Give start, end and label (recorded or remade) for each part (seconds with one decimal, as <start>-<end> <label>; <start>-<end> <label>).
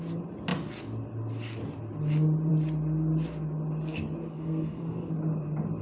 0.0-4.3 recorded; 4.3-5.1 remade; 5.1-5.8 recorded